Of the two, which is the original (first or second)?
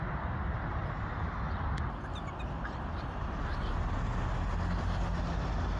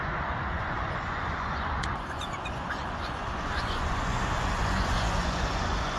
first